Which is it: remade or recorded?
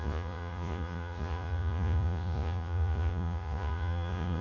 remade